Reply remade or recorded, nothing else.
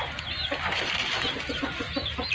recorded